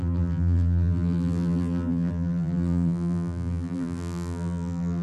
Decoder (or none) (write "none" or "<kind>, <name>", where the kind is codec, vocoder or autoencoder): vocoder, BigVGAN v2